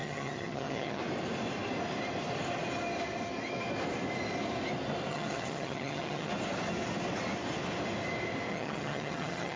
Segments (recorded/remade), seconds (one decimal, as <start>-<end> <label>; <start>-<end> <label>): 0.0-1.0 remade; 1.0-5.1 recorded; 5.1-6.3 remade; 6.3-8.5 recorded; 8.5-9.6 remade